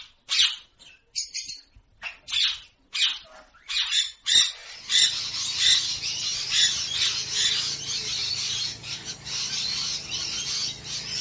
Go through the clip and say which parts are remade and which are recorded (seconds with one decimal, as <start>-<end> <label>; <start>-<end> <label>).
0.0-8.2 recorded; 8.2-9.5 remade; 9.5-11.2 recorded